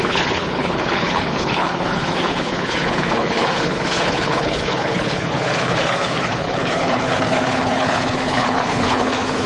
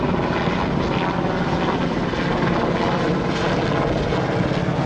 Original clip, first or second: second